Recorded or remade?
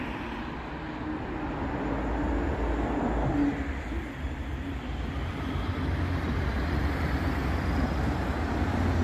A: recorded